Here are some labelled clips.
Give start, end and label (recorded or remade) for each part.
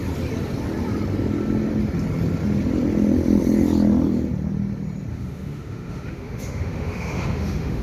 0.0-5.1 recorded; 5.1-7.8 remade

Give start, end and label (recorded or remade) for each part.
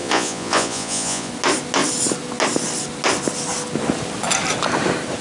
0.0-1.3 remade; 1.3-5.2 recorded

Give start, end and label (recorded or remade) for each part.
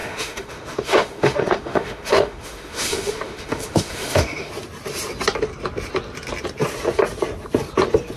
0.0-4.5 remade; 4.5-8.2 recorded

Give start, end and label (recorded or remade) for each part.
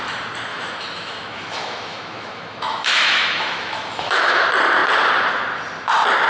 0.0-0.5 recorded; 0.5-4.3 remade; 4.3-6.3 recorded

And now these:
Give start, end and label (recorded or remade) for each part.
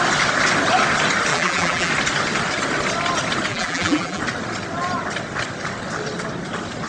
0.0-1.3 recorded; 1.3-1.9 remade; 1.9-3.5 recorded; 3.5-4.2 remade; 4.2-6.9 recorded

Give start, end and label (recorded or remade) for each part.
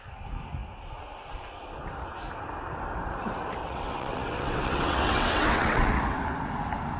0.0-3.6 recorded; 3.6-6.0 remade; 6.0-7.0 recorded